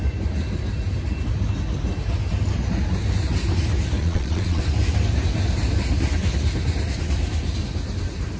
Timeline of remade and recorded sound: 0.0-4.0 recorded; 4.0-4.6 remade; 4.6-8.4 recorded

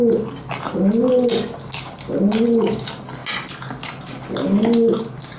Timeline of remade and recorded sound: 0.0-5.4 recorded